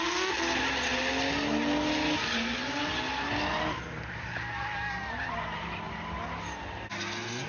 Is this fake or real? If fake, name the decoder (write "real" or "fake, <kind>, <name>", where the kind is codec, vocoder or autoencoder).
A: real